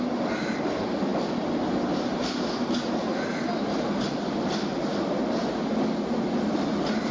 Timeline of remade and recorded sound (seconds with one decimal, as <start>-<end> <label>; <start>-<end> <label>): 0.0-7.1 recorded